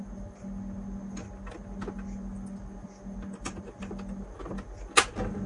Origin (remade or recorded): recorded